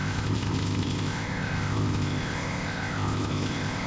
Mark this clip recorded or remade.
remade